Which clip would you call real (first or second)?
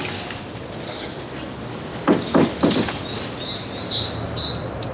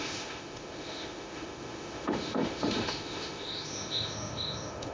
first